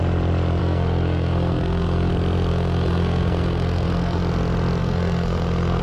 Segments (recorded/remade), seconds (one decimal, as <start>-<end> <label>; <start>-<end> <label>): 0.0-0.6 recorded; 0.6-2.1 remade; 2.1-2.5 recorded; 2.5-4.2 remade; 4.2-4.8 recorded; 4.8-5.8 remade